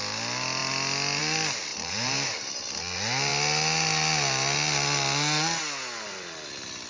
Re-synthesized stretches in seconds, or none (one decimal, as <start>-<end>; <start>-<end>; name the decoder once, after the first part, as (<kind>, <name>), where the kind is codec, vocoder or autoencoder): 1.7-2.7 (vocoder, BigVGAN v2)

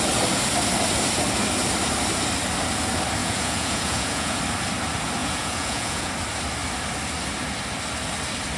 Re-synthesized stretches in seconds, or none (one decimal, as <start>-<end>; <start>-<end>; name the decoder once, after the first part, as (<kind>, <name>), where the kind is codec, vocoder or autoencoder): 3.2-4.4 (vocoder, Vocos); 5.2-6.1

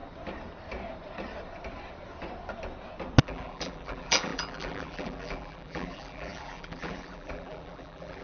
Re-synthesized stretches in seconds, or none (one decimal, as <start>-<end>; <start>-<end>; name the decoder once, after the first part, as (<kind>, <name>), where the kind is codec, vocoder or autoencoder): 3.2-8.2 (vocoder, BigVGAN v2)

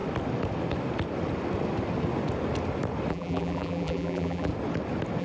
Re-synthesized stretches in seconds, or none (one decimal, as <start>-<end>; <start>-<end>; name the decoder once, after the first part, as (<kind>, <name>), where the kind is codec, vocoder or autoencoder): 3.1-4.5 (vocoder, BigVGAN v2)

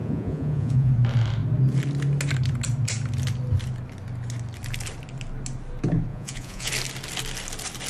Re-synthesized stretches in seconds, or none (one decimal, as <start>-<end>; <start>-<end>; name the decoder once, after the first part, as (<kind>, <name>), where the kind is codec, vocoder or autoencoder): 0.0-0.9 (vocoder, Vocos); 6.1-6.7

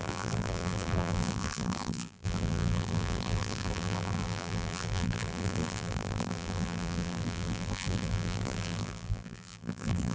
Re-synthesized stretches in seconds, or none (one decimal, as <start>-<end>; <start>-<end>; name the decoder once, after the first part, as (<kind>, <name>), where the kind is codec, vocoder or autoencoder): 0.0-10.1 (vocoder, BigVGAN v2)